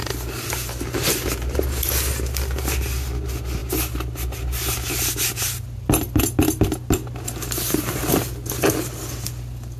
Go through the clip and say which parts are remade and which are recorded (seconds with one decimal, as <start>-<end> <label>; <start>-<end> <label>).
0.0-9.8 recorded